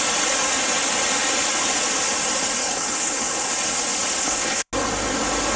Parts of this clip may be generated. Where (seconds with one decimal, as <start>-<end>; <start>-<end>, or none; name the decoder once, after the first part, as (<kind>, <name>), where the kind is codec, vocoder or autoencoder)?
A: 2.6-3.5 (codec, HILCodec); 4.2-4.7